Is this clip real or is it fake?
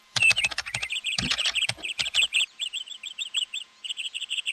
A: fake